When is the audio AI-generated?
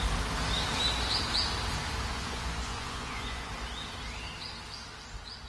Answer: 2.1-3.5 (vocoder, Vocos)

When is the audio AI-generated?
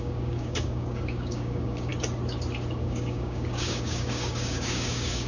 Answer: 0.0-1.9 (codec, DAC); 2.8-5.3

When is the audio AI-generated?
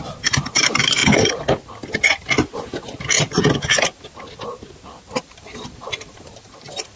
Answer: 0.0-1.0 (vocoder, BigVGAN v2); 5.2-7.0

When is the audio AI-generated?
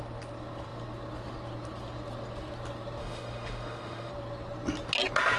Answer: 3.0-4.1 (autoencoder, DAC-VAE)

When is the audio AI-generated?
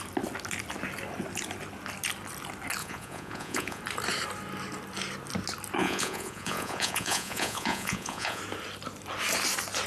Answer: 2.8-3.8 (vocoder, Vocos); 5.8-8.4